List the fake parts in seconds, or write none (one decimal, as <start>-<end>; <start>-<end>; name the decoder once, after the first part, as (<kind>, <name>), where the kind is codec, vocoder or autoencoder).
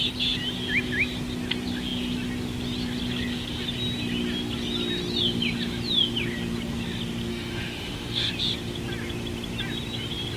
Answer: 7.3-8.3 (autoencoder, DAC-VAE)